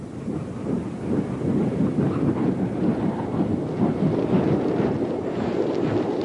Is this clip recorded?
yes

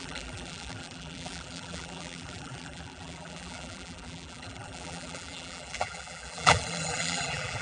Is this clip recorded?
no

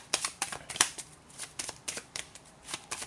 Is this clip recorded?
no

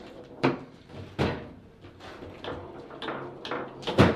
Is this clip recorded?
yes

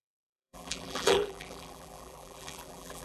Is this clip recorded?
no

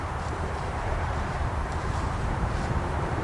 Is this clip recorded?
no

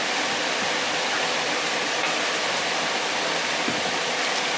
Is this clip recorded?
no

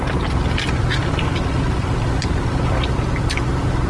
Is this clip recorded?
yes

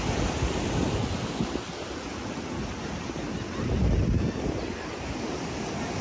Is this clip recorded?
yes